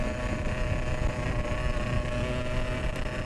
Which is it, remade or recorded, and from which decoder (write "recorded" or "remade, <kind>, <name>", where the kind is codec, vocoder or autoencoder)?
recorded